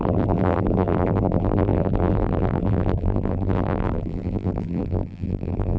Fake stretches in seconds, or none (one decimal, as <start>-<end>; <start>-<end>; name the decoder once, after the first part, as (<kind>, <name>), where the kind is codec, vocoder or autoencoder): 0.0-5.8 (vocoder, BigVGAN v2)